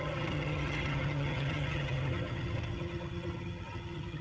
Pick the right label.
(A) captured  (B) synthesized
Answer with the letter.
B